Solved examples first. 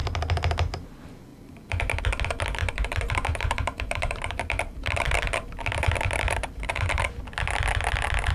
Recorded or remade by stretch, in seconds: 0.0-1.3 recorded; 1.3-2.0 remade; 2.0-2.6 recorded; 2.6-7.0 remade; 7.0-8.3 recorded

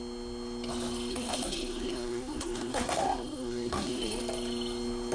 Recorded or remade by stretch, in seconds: 0.0-1.1 recorded; 1.1-4.2 remade; 4.2-5.1 recorded

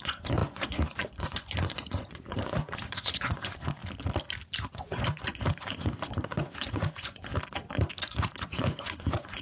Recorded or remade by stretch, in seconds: 0.0-3.8 remade; 3.8-4.7 recorded; 4.7-7.3 remade; 7.3-7.9 recorded; 7.9-9.4 remade

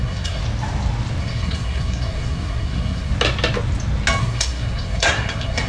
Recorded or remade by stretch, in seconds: 0.0-0.4 remade; 0.4-1.2 recorded; 1.2-3.1 remade; 3.1-4.2 recorded; 4.2-5.7 remade

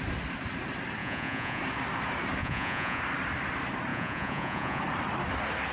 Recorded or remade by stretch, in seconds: 0.0-1.0 recorded; 1.0-1.6 remade; 1.6-2.4 recorded; 2.4-3.0 remade; 3.0-3.9 recorded; 3.9-4.8 remade; 4.8-5.7 recorded

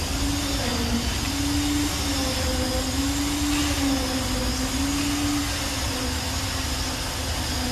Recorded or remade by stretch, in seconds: 0.0-7.7 recorded

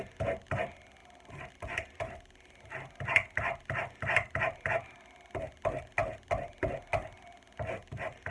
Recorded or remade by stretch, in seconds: 0.0-8.3 recorded